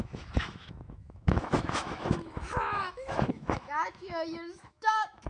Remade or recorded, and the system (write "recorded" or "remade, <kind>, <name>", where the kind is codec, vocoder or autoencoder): remade, autoencoder, DAC-VAE